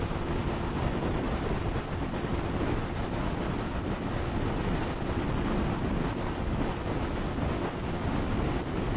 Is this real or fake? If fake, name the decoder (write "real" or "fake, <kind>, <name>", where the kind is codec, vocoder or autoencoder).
real